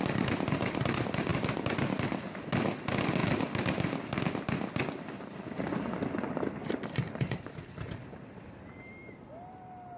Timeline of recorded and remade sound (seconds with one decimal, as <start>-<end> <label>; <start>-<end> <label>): 0.0-3.2 remade; 3.2-4.9 recorded; 4.9-10.0 remade